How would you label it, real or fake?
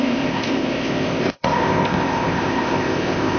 fake